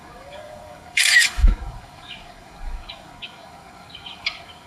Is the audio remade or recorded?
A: remade